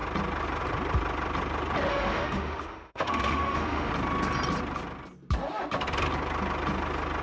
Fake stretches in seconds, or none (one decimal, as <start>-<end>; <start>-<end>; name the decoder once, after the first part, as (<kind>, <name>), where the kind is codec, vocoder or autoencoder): 1.9-3.9 (autoencoder, DAC-VAE)